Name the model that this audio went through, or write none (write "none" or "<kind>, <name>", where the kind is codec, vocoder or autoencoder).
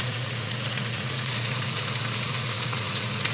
vocoder, Vocos